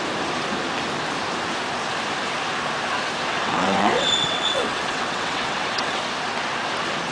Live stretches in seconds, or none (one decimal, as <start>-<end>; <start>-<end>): 0.0-3.3; 6.0-7.1